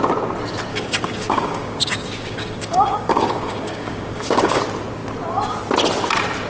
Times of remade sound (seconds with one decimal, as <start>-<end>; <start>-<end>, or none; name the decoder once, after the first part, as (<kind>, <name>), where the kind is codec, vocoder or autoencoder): 0.7-4.6 (codec, DAC)